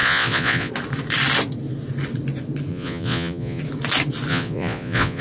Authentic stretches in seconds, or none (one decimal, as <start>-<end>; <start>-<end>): 0.7-2.7; 3.6-4.3